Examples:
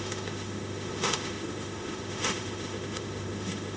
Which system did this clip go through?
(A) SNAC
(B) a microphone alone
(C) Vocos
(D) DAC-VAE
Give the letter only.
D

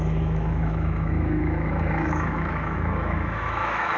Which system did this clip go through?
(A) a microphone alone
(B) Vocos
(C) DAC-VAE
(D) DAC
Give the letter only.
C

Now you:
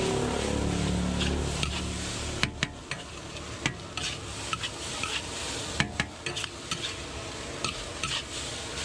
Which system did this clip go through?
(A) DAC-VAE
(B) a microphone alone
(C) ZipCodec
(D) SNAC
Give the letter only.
B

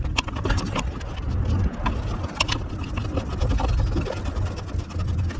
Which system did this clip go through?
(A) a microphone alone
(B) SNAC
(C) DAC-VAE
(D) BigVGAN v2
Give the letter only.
A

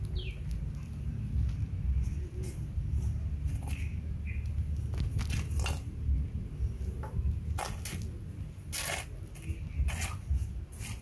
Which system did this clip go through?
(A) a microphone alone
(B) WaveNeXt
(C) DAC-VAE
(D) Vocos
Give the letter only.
A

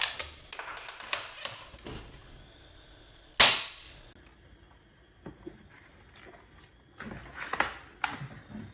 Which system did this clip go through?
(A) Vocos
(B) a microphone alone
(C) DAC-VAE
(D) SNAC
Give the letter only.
B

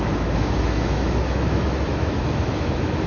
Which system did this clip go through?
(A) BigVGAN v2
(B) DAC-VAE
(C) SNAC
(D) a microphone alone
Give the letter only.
B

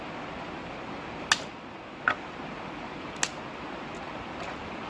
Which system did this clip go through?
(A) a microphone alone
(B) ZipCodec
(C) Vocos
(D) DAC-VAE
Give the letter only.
A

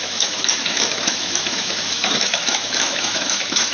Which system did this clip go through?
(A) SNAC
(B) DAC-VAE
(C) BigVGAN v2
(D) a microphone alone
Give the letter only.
B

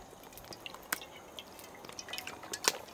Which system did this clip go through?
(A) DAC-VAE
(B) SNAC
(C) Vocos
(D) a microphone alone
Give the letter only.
D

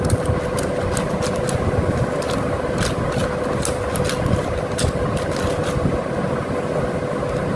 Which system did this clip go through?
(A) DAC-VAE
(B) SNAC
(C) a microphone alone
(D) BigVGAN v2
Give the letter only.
C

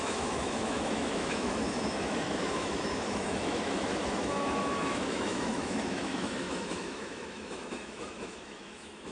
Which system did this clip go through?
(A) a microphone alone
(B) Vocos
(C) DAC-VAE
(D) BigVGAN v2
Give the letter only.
C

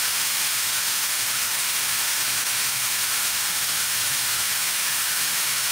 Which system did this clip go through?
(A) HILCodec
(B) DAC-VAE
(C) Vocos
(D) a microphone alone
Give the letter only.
B